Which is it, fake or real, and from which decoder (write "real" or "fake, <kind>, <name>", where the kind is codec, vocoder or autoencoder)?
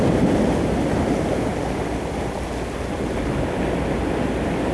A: real